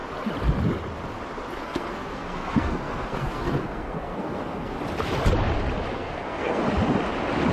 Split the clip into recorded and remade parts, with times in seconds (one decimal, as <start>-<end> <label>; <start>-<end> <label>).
0.0-1.6 recorded; 1.6-4.8 remade; 4.8-5.9 recorded; 5.9-6.6 remade; 6.6-7.5 recorded